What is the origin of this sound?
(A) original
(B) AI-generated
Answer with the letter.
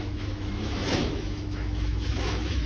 B